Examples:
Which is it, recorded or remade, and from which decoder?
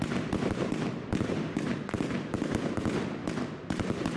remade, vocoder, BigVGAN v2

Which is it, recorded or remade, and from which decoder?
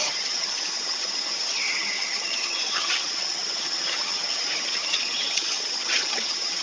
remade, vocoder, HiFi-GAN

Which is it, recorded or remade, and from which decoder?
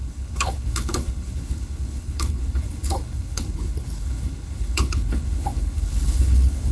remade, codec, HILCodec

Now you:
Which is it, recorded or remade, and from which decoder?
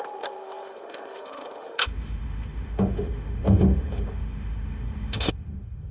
remade, autoencoder, DAC-VAE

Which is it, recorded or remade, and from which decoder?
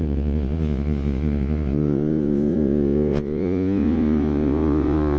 remade, vocoder, Vocos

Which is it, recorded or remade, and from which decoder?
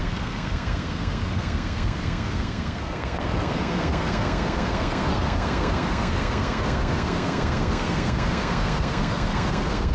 remade, codec, SNAC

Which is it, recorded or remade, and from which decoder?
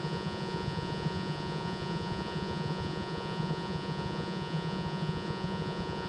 remade, vocoder, Vocos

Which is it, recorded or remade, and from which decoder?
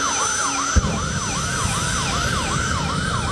recorded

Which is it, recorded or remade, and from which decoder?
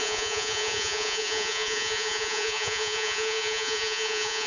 remade, vocoder, Vocos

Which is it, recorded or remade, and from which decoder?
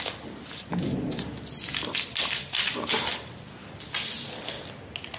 recorded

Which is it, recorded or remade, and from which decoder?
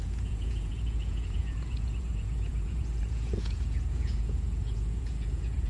remade, vocoder, Vocos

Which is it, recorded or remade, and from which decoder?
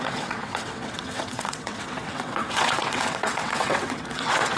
remade, vocoder, WaveNeXt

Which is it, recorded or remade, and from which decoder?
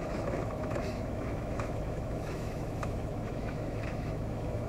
remade, autoencoder, DAC-VAE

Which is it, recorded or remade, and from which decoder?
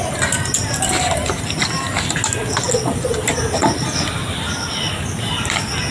recorded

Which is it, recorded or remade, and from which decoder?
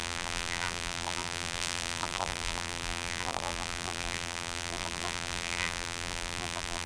remade, vocoder, BigVGAN v2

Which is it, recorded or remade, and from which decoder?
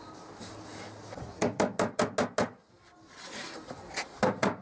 recorded